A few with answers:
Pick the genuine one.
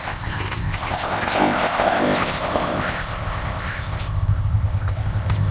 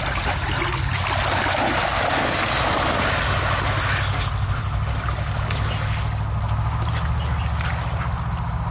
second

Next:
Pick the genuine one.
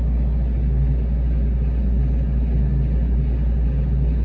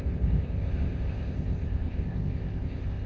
first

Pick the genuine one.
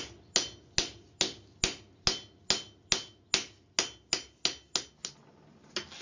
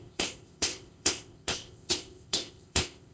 first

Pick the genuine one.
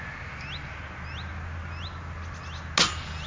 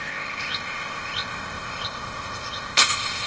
first